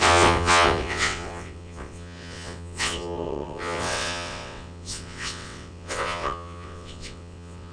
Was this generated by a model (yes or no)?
yes